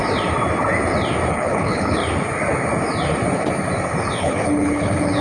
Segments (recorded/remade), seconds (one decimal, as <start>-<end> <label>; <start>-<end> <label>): 0.0-1.3 recorded; 1.3-2.0 remade; 2.0-4.2 recorded; 4.2-5.2 remade